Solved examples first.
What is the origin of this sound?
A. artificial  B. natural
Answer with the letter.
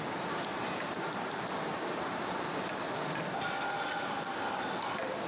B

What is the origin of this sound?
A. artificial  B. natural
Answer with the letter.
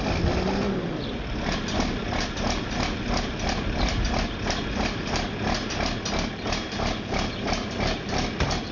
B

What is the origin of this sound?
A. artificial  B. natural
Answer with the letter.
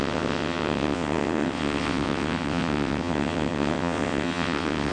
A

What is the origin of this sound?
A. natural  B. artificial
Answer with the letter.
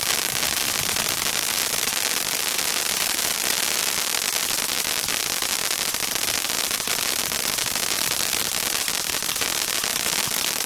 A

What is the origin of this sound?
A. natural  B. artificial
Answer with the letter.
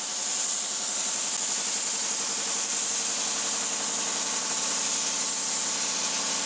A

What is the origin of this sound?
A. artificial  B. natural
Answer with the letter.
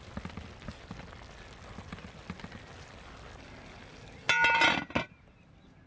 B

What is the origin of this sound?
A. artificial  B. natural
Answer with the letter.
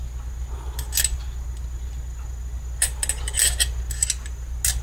B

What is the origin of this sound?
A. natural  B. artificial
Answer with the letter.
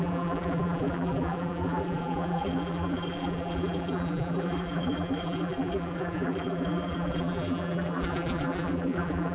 B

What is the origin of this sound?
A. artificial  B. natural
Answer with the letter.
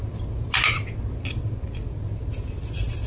B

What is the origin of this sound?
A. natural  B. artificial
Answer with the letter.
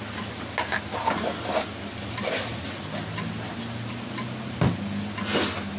A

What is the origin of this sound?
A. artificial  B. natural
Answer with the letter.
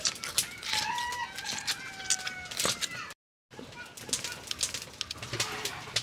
B